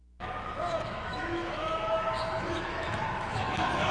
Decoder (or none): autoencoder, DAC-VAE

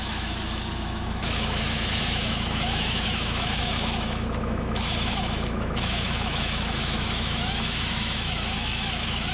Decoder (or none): autoencoder, DAC-VAE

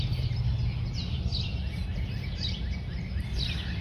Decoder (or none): none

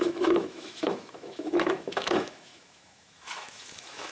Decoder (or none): autoencoder, DAC-VAE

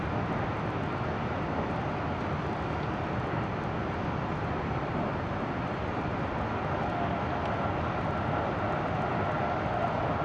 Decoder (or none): none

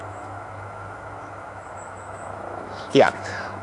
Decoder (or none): autoencoder, DAC-VAE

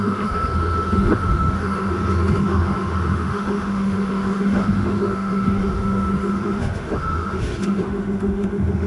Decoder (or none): autoencoder, DAC-VAE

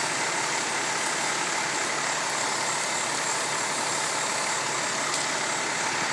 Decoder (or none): none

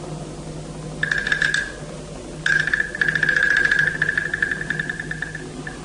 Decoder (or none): none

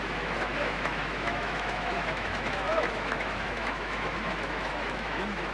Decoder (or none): autoencoder, DAC-VAE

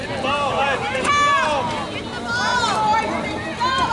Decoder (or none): none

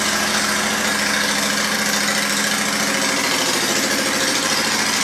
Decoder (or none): none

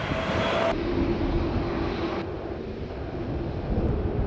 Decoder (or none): none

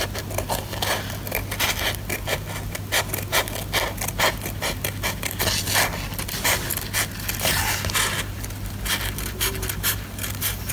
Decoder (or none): none